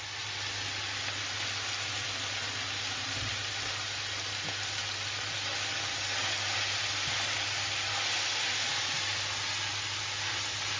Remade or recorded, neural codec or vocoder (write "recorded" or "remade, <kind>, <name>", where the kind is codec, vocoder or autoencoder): recorded